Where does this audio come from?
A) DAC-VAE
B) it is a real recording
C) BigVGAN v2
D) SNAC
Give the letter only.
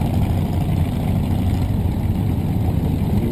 B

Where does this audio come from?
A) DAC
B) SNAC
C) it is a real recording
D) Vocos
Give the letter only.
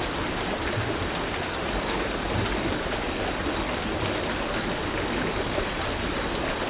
C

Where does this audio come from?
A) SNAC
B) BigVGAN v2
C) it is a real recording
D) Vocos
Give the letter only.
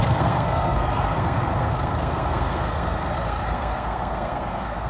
A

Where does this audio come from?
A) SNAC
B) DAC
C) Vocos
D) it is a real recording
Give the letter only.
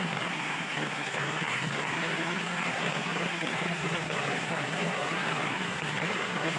A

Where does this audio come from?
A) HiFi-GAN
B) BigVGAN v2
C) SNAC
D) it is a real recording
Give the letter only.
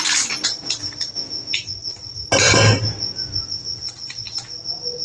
D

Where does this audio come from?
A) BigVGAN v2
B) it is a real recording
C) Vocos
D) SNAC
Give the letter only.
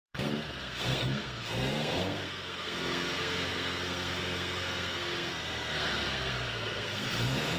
D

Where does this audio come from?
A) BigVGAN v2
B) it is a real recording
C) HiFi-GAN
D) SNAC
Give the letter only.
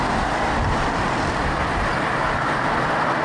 B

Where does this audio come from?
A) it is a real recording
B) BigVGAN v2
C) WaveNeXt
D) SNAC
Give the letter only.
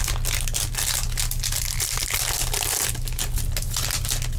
A